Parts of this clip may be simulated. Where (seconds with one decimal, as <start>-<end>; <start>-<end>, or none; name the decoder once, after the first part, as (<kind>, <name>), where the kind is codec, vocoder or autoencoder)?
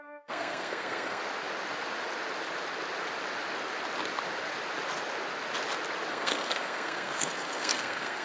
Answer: 0.0-1.2 (codec, SNAC); 6.1-8.2